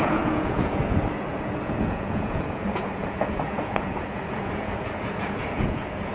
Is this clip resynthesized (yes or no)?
yes